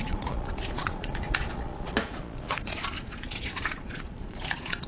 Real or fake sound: fake